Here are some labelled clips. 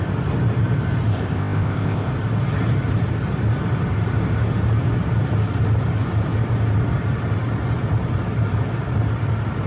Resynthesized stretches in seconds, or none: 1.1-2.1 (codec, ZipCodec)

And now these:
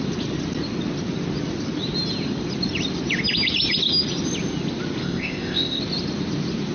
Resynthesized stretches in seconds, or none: 5.0-5.8 (codec, ZipCodec)

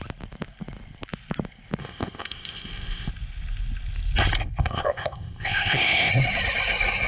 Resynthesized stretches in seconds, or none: 1.8-3.1 (codec, ZipCodec); 4.6-6.1

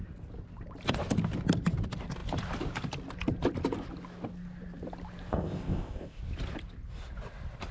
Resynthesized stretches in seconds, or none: 5.3-6.2 (codec, ZipCodec)

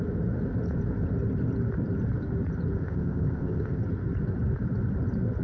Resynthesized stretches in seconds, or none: 2.8-3.8 (codec, ZipCodec)

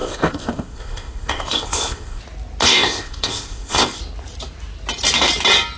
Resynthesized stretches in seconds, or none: 0.0-2.2 (codec, ZipCodec); 2.6-4.0